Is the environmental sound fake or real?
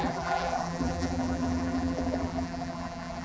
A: fake